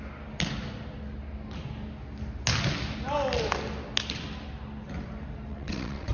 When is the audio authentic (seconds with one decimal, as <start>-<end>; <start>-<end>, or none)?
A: 0.0-5.5